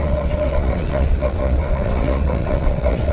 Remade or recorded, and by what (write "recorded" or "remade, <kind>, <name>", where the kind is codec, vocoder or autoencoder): remade, vocoder, WaveNeXt